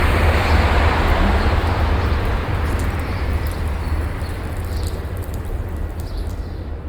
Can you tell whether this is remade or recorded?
remade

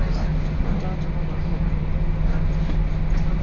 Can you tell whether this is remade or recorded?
recorded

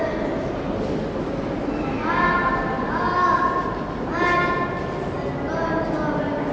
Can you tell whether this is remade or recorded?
recorded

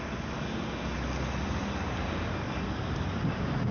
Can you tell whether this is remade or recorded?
recorded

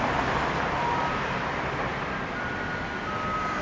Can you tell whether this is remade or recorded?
recorded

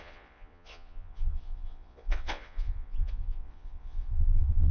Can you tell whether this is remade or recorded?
remade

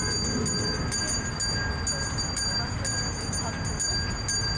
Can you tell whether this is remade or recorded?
recorded